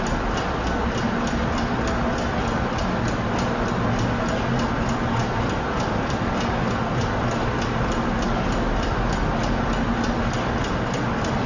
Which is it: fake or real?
real